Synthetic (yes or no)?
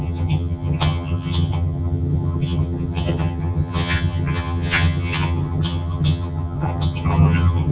yes